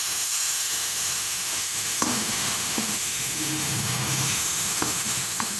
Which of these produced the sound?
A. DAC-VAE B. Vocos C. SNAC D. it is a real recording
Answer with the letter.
A